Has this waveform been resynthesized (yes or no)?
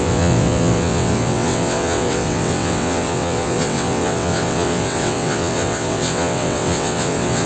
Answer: yes